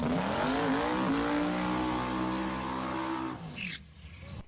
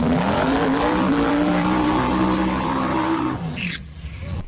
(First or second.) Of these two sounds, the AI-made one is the second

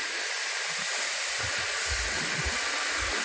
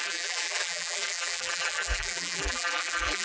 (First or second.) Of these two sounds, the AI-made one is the second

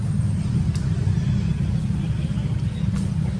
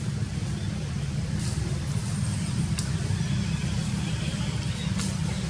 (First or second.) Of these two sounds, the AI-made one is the second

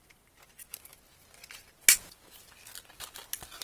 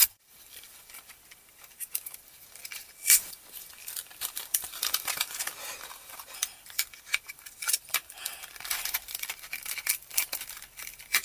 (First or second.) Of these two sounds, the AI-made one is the second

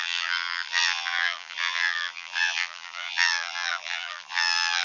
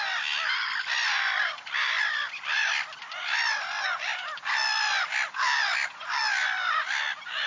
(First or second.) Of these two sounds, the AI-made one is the first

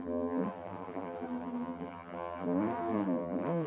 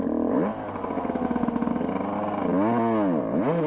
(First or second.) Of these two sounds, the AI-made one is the first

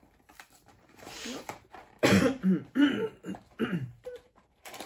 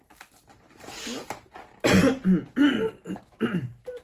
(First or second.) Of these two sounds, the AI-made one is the first